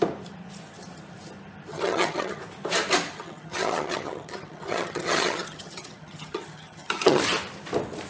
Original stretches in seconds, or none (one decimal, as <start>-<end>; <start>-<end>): 0.0-1.7; 2.4-3.1; 7.2-8.1